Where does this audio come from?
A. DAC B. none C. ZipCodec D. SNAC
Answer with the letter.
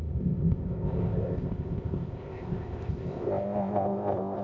C